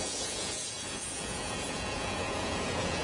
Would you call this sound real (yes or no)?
no